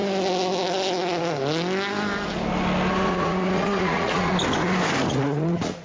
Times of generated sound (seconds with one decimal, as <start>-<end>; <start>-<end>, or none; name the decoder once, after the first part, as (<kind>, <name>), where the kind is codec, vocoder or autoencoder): 3.1-4.3 (vocoder, Vocos); 5.1-5.8